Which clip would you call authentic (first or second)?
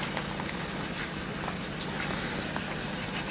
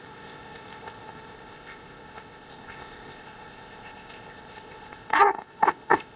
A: first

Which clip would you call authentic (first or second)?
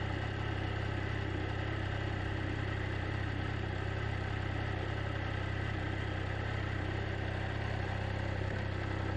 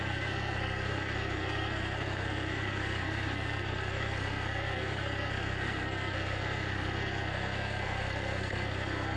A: first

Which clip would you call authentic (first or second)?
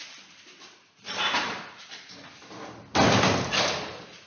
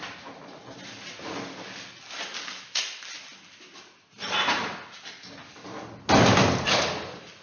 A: second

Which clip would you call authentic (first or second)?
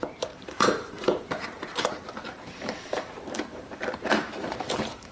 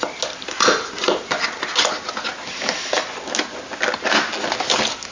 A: second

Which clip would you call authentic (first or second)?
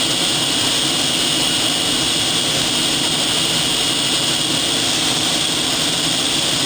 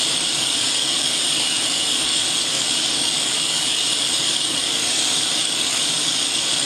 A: first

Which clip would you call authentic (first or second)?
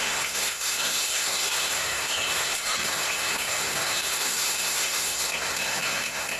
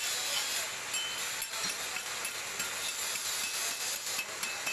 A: second